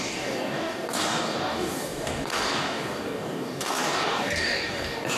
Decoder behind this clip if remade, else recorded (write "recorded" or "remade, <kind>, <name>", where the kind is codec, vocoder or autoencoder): remade, codec, DAC